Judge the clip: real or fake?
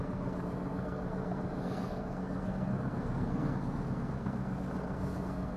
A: fake